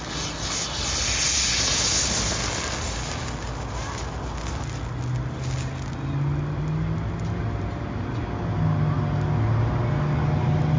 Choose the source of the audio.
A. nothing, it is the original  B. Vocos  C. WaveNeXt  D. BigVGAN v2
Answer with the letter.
A